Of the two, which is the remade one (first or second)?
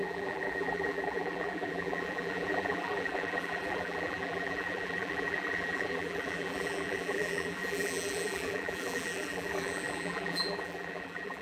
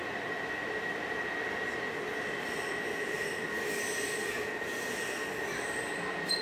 first